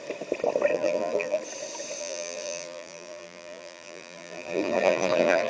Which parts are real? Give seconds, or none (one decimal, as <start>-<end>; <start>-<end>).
0.0-0.7; 1.4-2.0